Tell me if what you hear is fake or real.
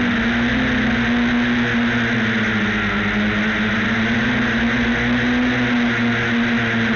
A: real